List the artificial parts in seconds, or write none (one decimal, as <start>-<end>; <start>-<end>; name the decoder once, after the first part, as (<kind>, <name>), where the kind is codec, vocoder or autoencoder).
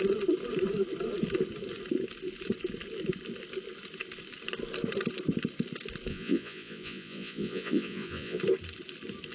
6.1-8.4 (vocoder, Vocos)